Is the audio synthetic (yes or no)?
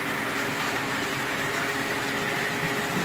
no